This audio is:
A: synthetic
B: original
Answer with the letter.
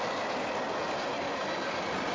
B